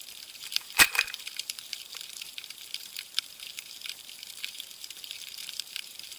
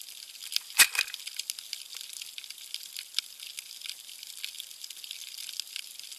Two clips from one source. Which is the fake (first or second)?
first